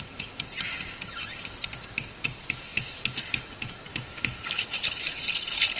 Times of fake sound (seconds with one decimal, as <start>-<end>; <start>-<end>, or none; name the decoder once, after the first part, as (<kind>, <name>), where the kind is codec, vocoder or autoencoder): 3.9-5.2 (autoencoder, DAC-VAE)